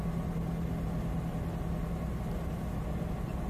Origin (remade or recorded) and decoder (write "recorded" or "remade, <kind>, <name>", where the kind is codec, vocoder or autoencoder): recorded